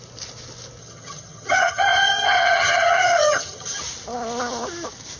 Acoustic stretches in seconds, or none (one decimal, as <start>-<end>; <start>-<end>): 0.0-0.8; 3.8-5.2